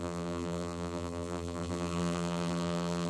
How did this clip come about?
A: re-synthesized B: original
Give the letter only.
A